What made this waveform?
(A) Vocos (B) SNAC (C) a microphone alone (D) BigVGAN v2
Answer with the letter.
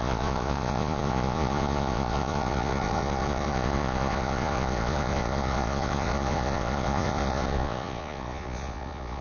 A